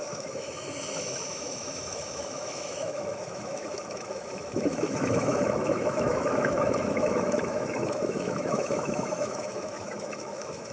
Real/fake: fake